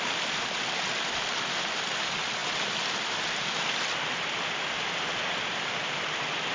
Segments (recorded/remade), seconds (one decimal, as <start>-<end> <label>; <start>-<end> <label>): 0.0-6.5 recorded